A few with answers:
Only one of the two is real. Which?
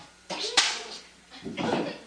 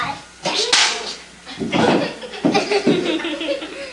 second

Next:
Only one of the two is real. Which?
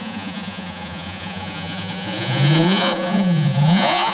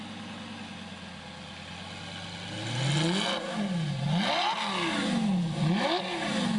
second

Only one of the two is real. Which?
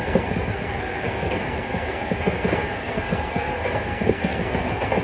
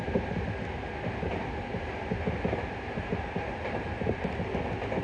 second